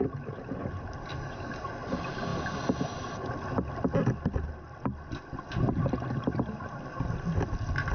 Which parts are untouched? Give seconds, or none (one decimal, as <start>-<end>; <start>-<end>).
0.0-7.9